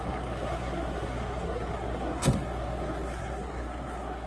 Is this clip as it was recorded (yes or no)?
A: no